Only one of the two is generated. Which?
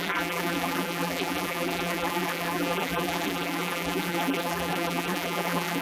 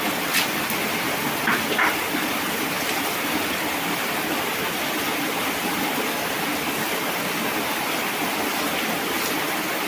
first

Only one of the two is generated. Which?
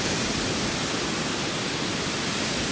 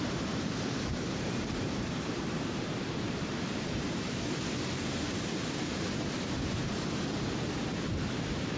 second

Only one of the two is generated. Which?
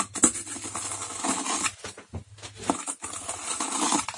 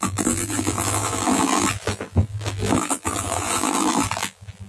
second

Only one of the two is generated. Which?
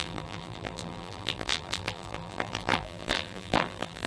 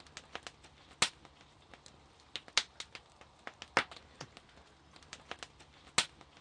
first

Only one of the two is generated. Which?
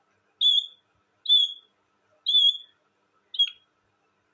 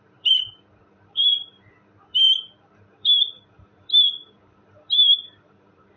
second